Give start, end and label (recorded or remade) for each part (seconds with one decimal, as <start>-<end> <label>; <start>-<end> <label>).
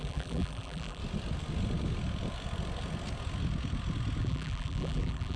0.0-1.0 remade; 1.0-4.2 recorded; 4.2-5.4 remade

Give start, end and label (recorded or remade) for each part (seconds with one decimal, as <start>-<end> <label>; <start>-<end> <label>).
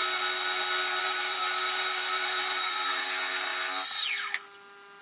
0.0-1.0 recorded; 1.0-3.5 remade; 3.5-5.0 recorded